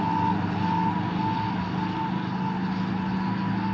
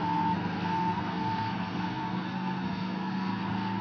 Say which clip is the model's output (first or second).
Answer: second